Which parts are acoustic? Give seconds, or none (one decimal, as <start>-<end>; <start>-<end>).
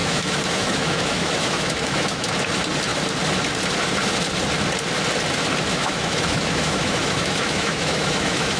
2.3-5.7